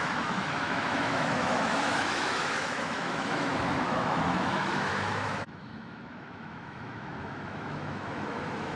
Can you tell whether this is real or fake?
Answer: fake